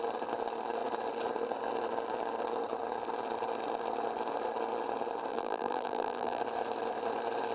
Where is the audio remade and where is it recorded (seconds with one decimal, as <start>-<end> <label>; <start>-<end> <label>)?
0.0-5.3 recorded; 5.3-6.4 remade; 6.4-7.5 recorded